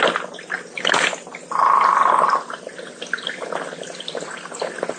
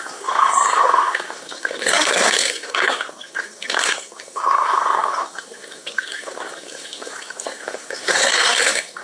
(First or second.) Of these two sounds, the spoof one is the second